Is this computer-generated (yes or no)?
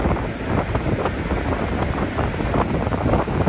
no